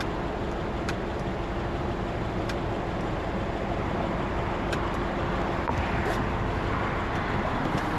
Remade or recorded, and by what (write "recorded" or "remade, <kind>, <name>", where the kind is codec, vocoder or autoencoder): remade, vocoder, BigVGAN v2